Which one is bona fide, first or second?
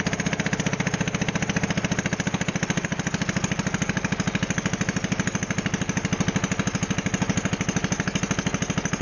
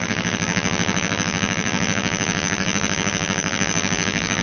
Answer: first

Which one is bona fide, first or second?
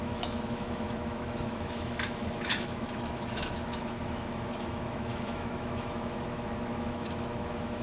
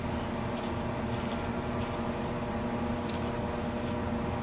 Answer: second